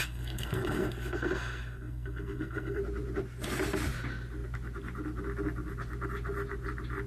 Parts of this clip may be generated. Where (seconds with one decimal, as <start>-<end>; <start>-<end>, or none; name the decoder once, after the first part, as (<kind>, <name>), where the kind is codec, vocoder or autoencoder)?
0.0-2.8 (codec, SNAC)